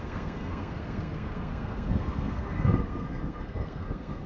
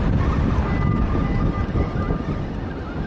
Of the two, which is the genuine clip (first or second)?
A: second